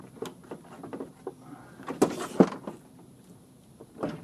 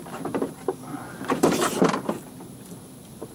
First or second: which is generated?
second